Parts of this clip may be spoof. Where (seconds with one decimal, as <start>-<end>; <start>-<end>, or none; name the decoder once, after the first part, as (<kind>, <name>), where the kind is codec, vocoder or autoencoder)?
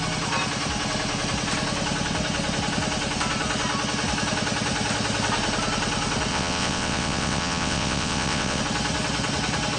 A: 6.3-8.6 (vocoder, WaveNeXt)